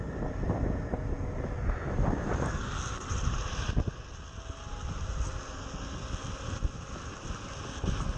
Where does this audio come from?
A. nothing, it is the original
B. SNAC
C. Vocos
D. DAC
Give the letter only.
A